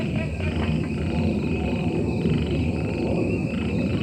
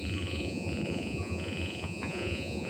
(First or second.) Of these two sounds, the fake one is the second